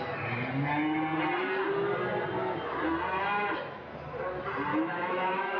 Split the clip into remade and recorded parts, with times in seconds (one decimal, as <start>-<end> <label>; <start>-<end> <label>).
0.0-4.7 recorded; 4.7-5.6 remade